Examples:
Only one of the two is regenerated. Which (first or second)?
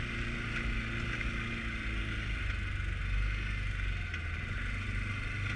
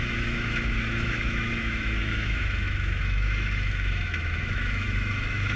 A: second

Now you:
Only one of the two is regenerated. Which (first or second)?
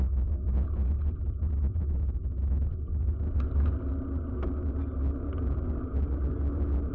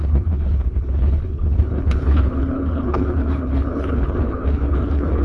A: second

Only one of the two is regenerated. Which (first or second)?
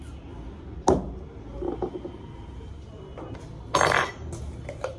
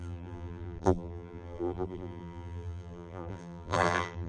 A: second